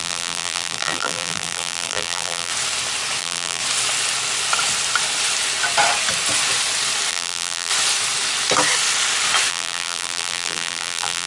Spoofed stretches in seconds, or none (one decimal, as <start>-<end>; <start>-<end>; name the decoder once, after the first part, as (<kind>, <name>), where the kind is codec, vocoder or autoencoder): 0.0-2.5 (vocoder, BigVGAN v2); 3.2-3.6; 7.1-7.7; 9.5-11.3